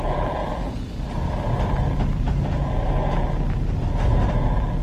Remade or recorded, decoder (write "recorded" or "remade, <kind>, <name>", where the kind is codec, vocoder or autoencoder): recorded